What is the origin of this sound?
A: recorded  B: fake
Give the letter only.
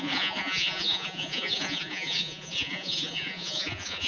B